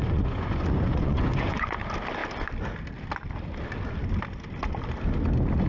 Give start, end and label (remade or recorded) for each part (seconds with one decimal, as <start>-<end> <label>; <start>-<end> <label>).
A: 0.0-1.8 remade; 1.8-5.7 recorded